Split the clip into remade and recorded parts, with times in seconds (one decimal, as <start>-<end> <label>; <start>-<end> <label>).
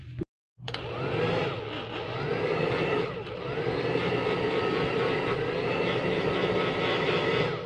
0.0-7.7 recorded